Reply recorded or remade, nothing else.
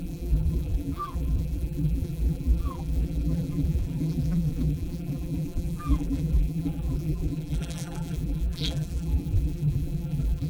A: remade